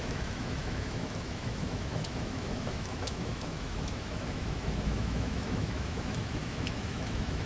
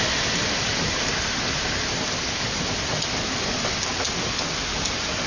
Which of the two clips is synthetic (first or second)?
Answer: first